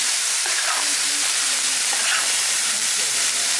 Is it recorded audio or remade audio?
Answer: remade